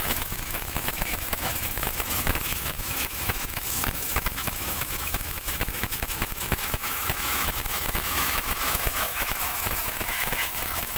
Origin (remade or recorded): remade